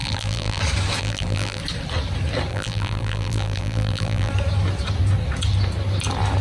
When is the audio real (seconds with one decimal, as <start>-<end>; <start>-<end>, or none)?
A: 0.6-1.0; 1.6-2.5; 4.3-6.4